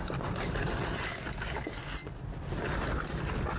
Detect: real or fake real